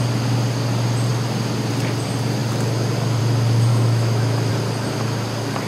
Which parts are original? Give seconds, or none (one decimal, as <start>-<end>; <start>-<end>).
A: 0.0-3.7; 4.5-5.7